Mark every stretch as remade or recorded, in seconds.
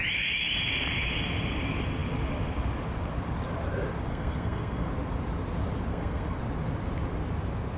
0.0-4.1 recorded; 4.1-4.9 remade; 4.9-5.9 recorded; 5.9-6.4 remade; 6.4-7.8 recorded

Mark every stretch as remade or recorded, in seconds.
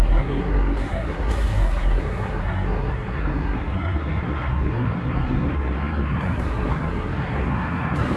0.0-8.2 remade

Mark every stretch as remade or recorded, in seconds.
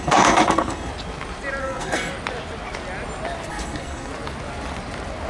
0.0-0.9 remade; 0.9-1.6 recorded; 1.6-2.1 remade; 2.1-3.5 recorded; 3.5-4.1 remade; 4.1-5.3 recorded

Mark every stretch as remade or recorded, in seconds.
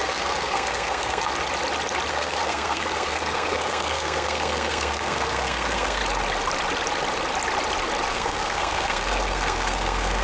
0.0-1.3 remade; 1.3-2.1 recorded; 2.1-6.0 remade; 6.0-8.1 recorded; 8.1-10.2 remade